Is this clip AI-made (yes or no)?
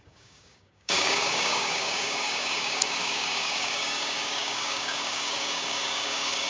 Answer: yes